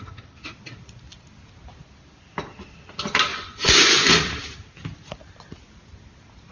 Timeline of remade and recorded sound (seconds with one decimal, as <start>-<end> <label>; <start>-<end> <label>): 0.0-3.3 recorded; 3.3-4.1 remade; 4.1-6.5 recorded